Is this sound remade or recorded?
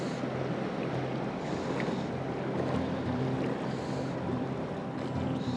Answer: recorded